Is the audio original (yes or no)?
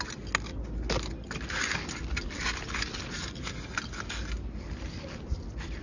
yes